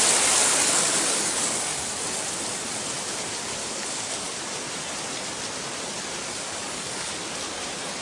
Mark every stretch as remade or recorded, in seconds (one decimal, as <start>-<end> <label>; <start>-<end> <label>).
0.0-0.4 recorded; 0.4-1.9 remade; 1.9-3.6 recorded; 3.6-4.4 remade; 4.4-6.2 recorded; 6.2-7.2 remade; 7.2-8.0 recorded